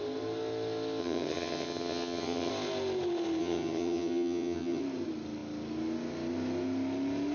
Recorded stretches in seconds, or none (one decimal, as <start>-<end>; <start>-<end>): 0.0-1.0; 2.5-3.4; 4.8-7.3